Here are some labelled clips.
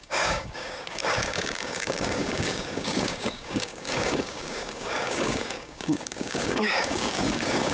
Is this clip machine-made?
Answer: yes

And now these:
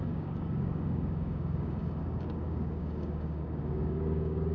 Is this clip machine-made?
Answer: yes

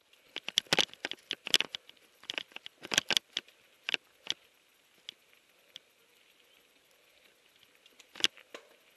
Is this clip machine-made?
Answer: no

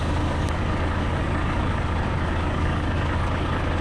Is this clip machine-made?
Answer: yes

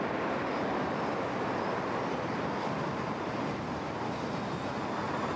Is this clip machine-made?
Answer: no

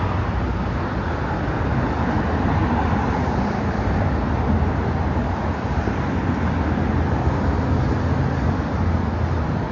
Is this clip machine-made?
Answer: no